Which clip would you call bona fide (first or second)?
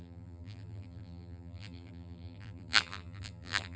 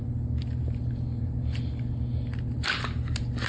second